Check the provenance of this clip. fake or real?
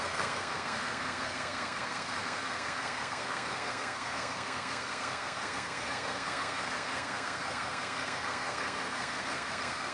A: fake